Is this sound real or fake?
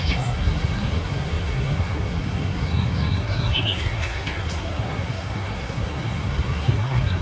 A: fake